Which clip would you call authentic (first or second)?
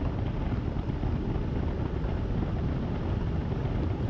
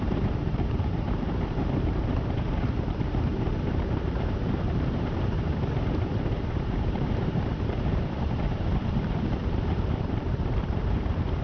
first